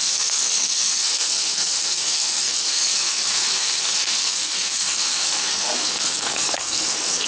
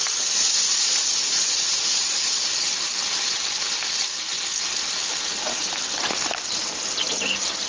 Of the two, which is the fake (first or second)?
first